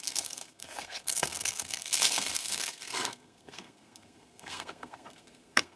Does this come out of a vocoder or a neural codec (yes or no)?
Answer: yes